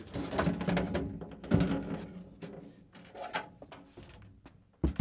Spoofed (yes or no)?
no